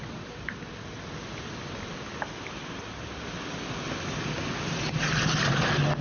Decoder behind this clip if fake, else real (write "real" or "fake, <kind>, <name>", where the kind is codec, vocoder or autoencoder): real